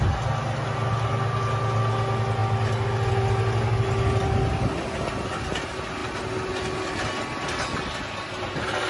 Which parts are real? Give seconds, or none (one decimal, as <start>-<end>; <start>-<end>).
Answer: 0.0-8.9